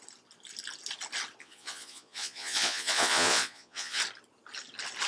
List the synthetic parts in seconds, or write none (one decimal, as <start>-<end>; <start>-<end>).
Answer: 1.4-4.0